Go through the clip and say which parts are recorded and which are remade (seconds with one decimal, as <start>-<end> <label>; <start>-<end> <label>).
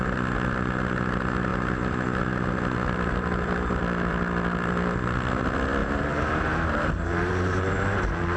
0.0-5.8 recorded; 5.8-8.4 remade